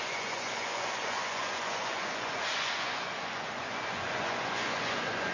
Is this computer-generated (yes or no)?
yes